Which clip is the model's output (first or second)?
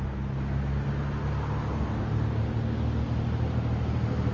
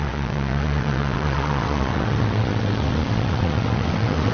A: second